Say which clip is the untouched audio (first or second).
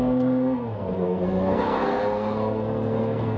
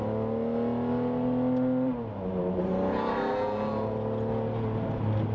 second